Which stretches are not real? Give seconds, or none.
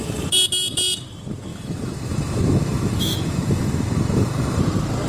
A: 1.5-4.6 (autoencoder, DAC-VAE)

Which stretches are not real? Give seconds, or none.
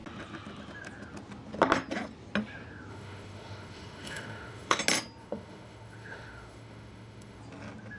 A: 2.9-4.8 (autoencoder, DAC-VAE); 5.2-7.4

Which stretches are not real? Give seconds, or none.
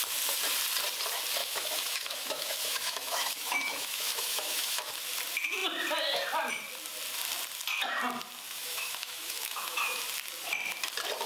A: 1.4-4.9 (autoencoder, DAC-VAE); 8.6-10.0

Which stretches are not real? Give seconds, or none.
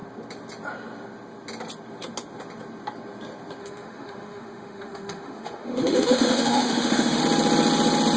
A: 3.6-7.2 (autoencoder, DAC-VAE)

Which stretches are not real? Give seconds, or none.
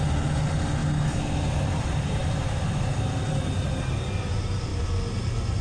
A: none